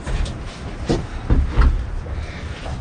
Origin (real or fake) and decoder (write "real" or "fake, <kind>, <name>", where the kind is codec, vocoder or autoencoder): real